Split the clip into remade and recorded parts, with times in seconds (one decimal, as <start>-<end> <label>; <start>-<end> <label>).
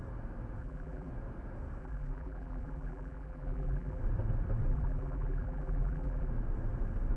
0.0-0.6 recorded; 0.6-1.1 remade; 1.1-1.8 recorded; 1.8-4.0 remade; 4.0-4.7 recorded; 4.7-6.3 remade; 6.3-7.2 recorded